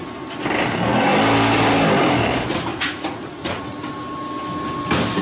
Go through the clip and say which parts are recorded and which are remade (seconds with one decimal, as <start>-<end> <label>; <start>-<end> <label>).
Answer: 0.0-2.7 recorded; 2.7-3.6 remade; 3.6-5.2 recorded